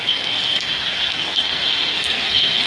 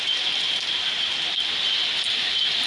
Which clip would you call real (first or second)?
second